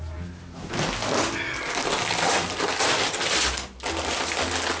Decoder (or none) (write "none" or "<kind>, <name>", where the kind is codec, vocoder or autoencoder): none